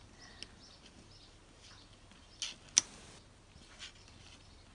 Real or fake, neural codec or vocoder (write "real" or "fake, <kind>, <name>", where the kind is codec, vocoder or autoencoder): real